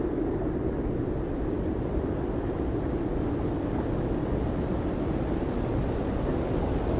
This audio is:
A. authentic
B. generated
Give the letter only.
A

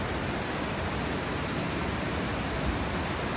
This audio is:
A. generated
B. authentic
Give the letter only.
B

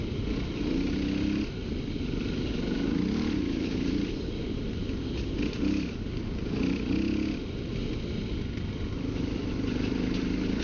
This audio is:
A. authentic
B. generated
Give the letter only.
A